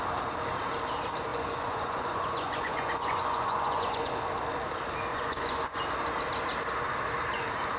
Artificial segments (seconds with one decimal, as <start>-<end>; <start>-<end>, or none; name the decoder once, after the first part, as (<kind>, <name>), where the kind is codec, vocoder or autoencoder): 1.3-4.1 (vocoder, Vocos); 5.1-5.8